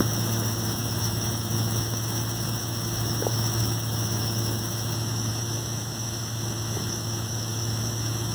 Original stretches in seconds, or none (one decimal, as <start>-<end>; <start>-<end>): none